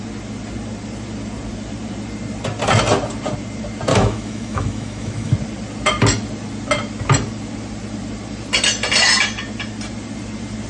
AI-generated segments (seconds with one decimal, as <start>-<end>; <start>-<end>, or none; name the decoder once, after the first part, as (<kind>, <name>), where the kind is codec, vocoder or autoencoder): 3.9-5.3 (autoencoder, DAC-VAE)